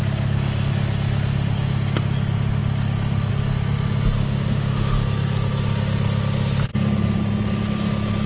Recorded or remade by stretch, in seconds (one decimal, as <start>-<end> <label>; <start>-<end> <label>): 0.0-4.2 recorded; 4.2-5.0 remade; 5.0-8.3 recorded